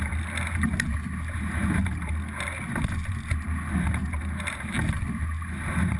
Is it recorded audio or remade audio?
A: recorded